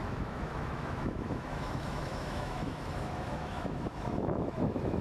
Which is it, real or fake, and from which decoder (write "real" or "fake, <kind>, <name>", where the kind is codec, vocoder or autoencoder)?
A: fake, autoencoder, DAC-VAE